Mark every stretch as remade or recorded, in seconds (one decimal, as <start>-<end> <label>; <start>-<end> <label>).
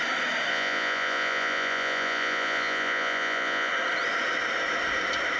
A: 0.0-0.5 recorded; 0.5-3.7 remade; 3.7-5.4 recorded